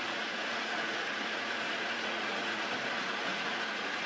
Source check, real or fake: fake